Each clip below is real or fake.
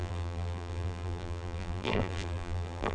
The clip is fake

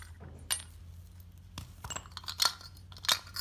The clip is real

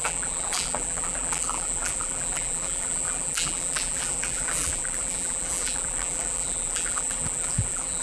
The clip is fake